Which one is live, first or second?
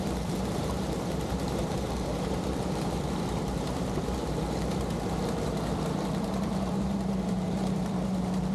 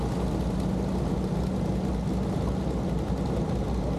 second